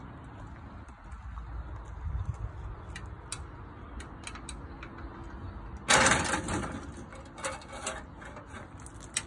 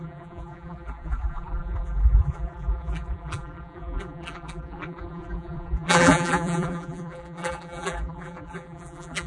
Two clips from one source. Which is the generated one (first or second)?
second